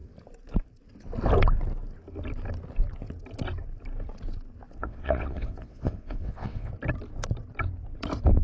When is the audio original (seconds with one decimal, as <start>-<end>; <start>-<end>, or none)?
0.0-4.8; 6.7-8.4